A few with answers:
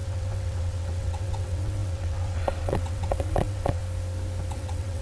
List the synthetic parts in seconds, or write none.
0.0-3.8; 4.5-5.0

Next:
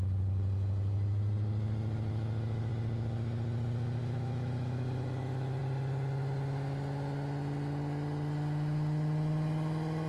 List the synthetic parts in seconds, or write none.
2.1-2.7; 4.0-5.6

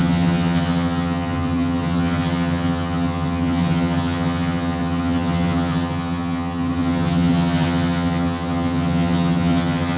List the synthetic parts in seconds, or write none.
0.0-10.0

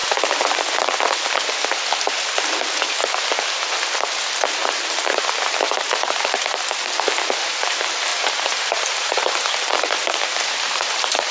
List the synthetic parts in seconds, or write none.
4.3-11.3